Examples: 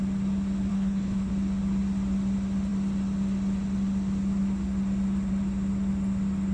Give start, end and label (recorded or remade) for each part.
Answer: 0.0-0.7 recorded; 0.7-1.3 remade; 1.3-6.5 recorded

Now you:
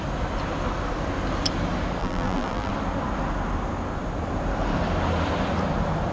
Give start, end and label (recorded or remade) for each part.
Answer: 0.0-2.0 recorded; 2.0-2.7 remade; 2.7-6.1 recorded

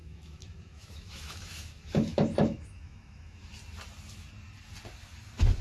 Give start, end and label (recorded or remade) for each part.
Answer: 0.0-3.5 remade; 3.5-5.6 recorded

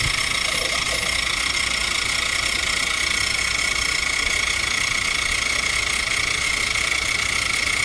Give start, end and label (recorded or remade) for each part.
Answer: 0.0-7.8 recorded